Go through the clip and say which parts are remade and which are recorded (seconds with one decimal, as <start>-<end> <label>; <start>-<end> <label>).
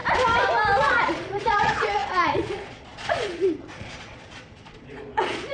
0.0-0.8 recorded; 0.8-5.5 remade